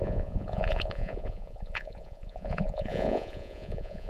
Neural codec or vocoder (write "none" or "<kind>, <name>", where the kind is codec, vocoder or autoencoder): vocoder, Vocos